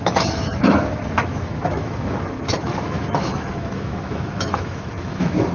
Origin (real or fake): fake